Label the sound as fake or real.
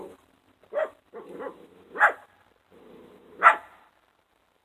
real